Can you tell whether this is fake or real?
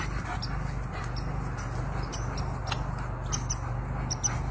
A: real